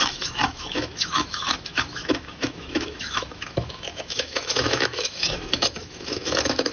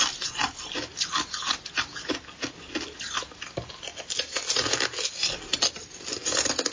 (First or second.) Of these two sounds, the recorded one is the second